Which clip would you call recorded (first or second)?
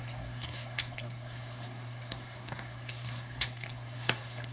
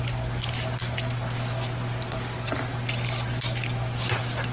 second